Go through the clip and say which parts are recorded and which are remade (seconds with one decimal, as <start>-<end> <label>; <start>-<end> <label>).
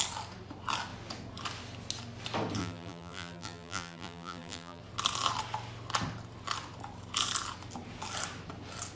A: 0.0-2.6 recorded; 2.6-4.8 remade; 4.8-9.0 recorded